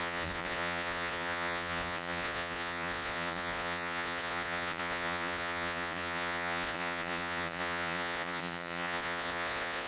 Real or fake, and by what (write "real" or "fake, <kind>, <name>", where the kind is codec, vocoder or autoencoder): fake, vocoder, Vocos